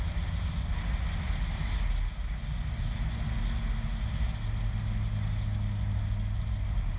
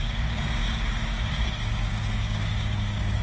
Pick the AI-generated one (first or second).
second